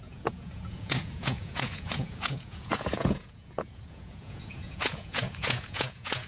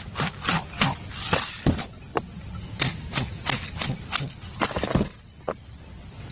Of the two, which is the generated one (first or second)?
first